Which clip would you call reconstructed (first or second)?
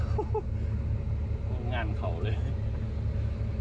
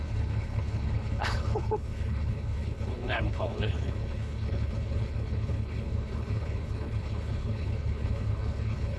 second